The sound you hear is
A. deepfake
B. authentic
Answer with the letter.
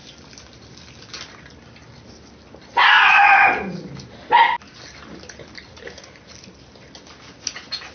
B